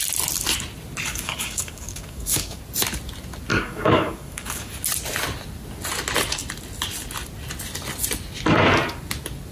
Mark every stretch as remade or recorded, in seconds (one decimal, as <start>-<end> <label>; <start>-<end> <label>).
0.0-1.1 recorded; 1.1-2.6 remade; 2.6-3.5 recorded; 3.5-4.7 remade; 4.7-9.5 recorded